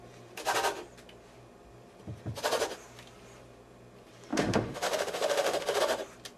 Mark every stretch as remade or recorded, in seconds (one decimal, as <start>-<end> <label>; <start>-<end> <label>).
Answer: 0.0-4.3 recorded; 4.3-5.8 remade; 5.8-6.4 recorded